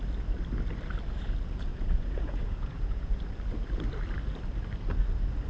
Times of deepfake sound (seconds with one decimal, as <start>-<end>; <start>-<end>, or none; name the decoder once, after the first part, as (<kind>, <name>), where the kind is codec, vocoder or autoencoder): 1.7-3.2 (vocoder, Vocos)